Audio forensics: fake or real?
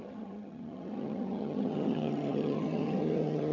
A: fake